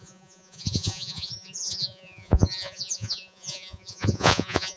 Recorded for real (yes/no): no